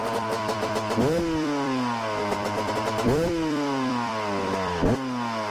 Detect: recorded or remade remade